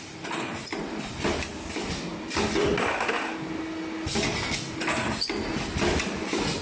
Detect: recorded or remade recorded